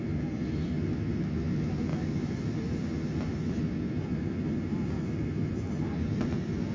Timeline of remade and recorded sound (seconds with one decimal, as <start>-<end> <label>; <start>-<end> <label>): 0.0-6.7 recorded